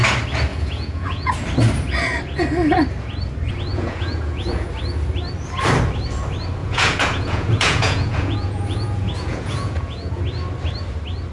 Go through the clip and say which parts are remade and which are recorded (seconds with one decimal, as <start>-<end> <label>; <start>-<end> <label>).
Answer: 0.0-0.5 recorded; 0.5-1.3 remade; 1.3-3.7 recorded; 3.7-4.7 remade; 4.7-6.6 recorded; 6.6-10.2 remade; 10.2-11.3 recorded